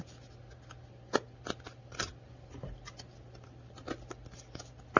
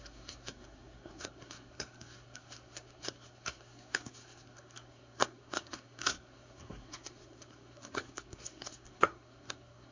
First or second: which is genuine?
first